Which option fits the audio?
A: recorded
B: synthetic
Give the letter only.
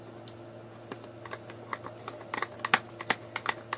A